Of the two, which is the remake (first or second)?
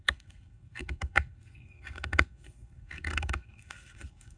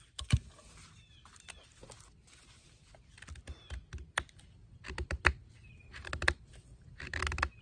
first